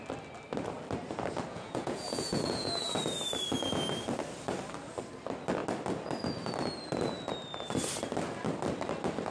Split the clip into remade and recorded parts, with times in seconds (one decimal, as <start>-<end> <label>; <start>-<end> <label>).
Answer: 0.0-1.5 recorded; 1.5-3.0 remade; 3.0-9.3 recorded